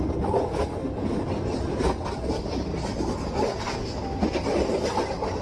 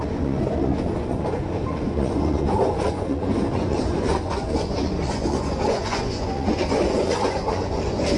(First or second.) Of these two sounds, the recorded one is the first